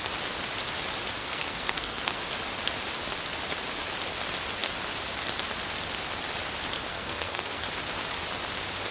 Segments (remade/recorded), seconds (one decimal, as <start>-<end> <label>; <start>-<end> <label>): 0.0-1.2 recorded; 1.2-2.2 remade; 2.2-6.9 recorded; 6.9-7.7 remade; 7.7-8.9 recorded